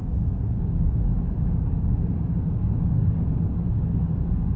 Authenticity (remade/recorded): remade